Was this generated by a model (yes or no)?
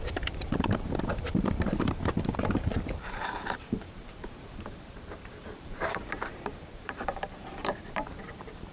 yes